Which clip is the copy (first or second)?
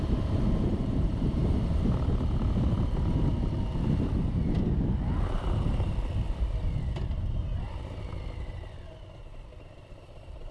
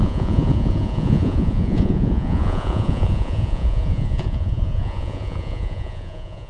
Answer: second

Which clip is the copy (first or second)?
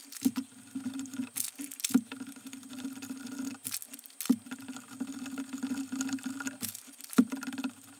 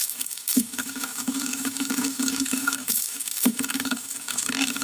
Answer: second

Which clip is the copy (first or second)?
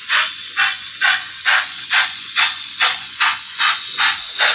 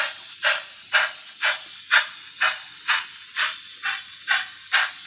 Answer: first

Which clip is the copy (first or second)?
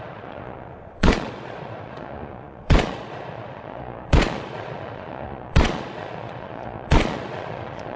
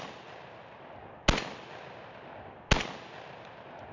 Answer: first